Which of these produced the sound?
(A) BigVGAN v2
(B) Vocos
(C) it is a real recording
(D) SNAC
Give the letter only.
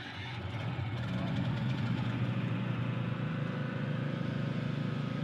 B